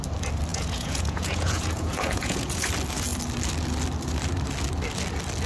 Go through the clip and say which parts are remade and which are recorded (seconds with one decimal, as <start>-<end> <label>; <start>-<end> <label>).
0.0-0.5 recorded; 0.5-2.7 remade; 2.7-5.5 recorded